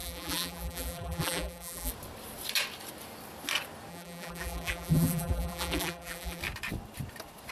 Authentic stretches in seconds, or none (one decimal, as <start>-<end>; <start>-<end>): 1.9-3.9; 6.4-7.5